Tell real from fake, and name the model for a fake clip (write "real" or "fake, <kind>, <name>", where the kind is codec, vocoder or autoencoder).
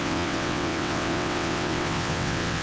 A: fake, vocoder, WaveNeXt